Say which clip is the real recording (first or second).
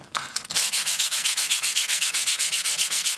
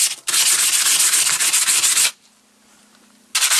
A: second